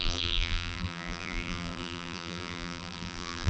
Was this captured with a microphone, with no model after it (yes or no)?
no